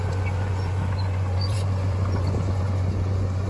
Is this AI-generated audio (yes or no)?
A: yes